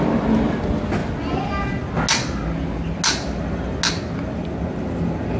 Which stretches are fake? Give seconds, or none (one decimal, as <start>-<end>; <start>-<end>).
none